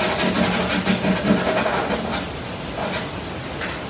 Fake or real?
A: real